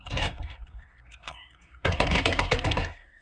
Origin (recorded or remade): remade